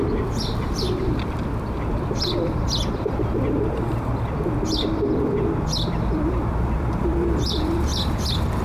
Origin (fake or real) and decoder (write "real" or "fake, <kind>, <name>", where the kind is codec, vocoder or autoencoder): fake, vocoder, BigVGAN v2